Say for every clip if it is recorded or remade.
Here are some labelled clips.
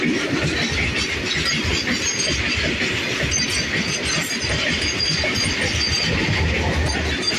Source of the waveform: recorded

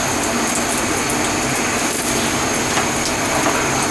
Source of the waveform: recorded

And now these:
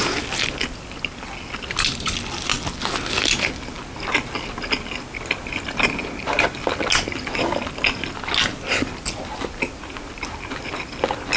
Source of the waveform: recorded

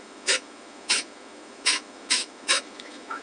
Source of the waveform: remade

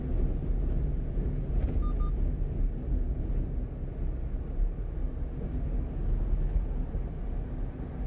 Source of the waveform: recorded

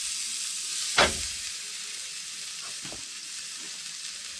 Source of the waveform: recorded